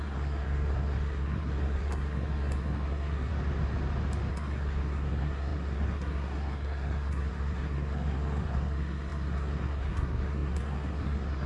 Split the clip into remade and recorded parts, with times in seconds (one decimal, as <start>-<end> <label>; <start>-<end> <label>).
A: 0.0-3.3 remade; 3.3-4.3 recorded; 4.3-11.5 remade